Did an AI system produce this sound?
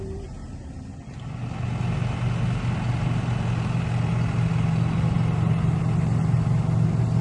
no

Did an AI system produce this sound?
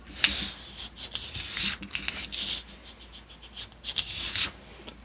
no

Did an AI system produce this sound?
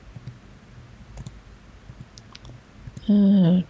no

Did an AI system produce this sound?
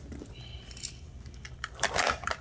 yes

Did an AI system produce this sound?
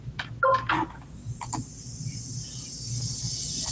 no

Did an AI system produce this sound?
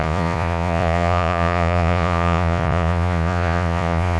yes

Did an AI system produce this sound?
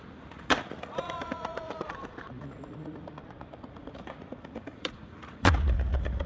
yes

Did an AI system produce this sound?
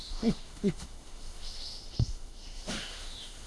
yes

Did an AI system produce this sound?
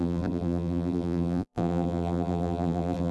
yes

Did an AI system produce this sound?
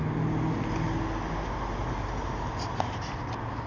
no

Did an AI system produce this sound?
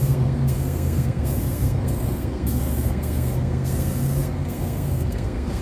yes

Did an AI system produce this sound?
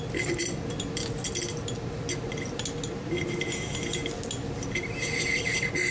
no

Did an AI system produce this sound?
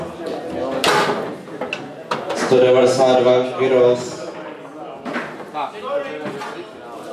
no